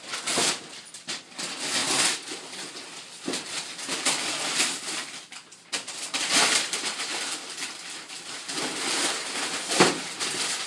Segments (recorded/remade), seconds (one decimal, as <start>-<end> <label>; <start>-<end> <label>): 0.0-10.7 remade